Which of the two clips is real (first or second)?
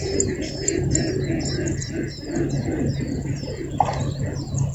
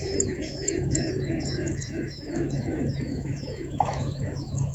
first